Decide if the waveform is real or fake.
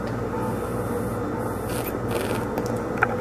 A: real